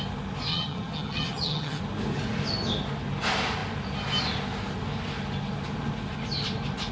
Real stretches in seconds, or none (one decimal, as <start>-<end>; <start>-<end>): 0.0-0.5; 1.8-6.9